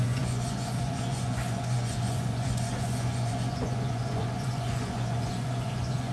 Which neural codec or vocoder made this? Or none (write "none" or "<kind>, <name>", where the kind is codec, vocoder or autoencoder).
vocoder, Vocos